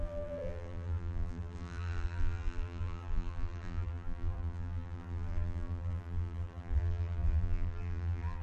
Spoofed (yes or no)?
yes